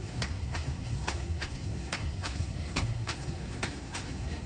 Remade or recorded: remade